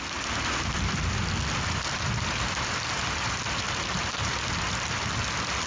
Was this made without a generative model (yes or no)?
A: yes